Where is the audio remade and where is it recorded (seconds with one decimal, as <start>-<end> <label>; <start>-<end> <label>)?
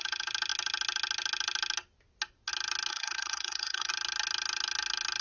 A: 0.0-2.9 recorded; 2.9-3.9 remade; 3.9-5.2 recorded